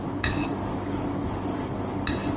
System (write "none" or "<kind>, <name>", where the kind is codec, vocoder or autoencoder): none